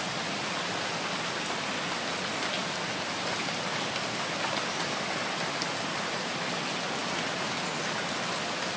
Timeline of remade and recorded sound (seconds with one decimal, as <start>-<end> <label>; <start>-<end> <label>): 0.0-8.8 recorded